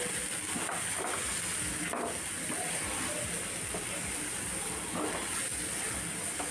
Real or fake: real